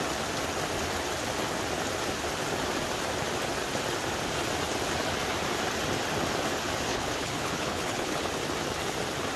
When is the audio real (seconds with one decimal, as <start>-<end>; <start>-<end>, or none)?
0.0-6.9; 8.3-9.4